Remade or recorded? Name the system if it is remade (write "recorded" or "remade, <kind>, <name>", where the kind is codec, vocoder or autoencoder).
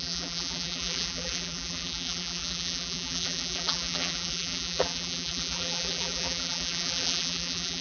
remade, vocoder, BigVGAN v2